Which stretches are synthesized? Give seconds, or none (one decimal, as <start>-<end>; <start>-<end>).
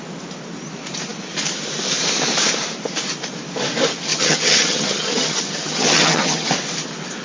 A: 4.1-6.5